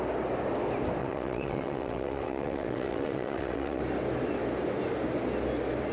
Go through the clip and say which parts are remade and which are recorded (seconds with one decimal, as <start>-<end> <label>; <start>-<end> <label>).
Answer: 0.0-1.0 recorded; 1.0-3.8 remade; 3.8-5.9 recorded